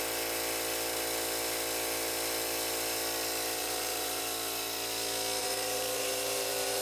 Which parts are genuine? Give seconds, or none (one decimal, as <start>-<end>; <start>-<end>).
0.0-3.6; 4.2-5.4